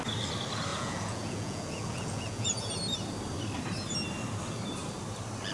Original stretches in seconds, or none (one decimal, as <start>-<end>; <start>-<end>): 0.0-0.7; 2.7-5.5